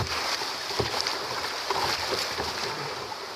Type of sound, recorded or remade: remade